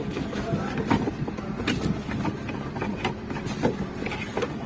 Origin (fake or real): real